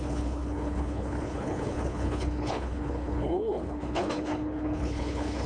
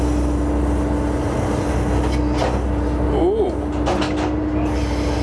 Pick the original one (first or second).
second